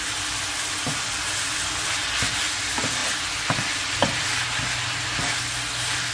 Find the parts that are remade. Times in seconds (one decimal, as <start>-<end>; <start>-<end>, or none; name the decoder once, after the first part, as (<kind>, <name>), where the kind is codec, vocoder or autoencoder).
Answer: none